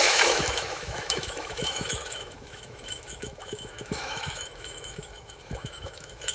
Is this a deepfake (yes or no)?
yes